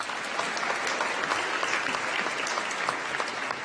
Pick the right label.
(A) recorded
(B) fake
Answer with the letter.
A